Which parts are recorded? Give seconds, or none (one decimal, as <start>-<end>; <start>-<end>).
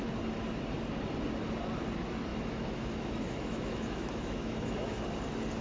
0.0-2.3; 5.0-5.6